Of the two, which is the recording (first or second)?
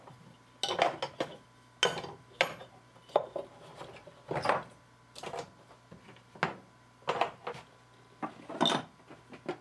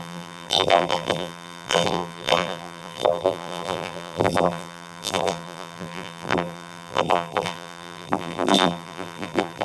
first